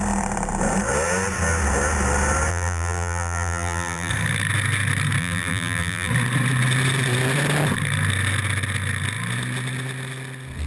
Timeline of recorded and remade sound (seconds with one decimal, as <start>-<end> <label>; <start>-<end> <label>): 0.0-2.5 recorded; 2.5-4.1 remade; 4.1-5.2 recorded; 5.2-6.1 remade; 6.1-10.7 recorded